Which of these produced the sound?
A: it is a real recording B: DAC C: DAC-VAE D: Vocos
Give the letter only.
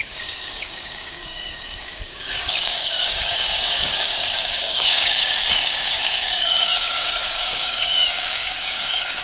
B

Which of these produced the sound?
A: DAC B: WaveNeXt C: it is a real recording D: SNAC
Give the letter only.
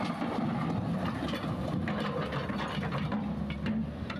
C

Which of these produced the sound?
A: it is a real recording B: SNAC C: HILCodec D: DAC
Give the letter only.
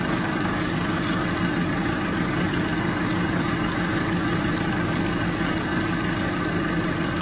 D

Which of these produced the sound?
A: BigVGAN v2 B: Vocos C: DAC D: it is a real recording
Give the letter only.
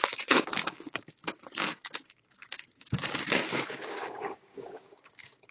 C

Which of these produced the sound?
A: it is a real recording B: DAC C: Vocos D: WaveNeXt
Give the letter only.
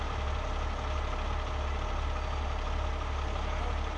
A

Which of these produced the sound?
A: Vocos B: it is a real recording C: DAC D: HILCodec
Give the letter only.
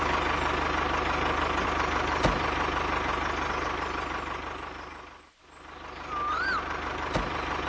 B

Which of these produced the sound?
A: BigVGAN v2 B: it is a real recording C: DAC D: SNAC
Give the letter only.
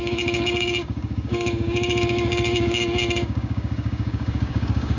C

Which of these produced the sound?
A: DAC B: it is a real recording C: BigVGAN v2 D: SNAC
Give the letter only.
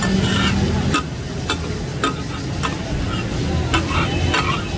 B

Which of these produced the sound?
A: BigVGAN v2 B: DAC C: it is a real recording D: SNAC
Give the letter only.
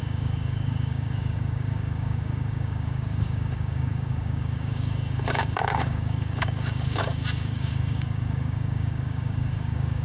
B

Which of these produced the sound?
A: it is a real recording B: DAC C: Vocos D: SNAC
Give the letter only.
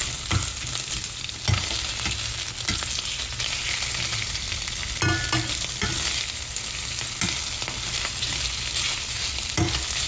A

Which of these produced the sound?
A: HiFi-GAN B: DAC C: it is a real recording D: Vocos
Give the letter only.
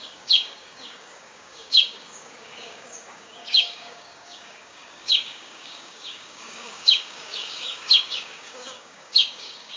B